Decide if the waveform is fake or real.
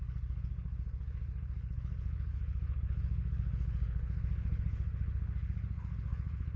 fake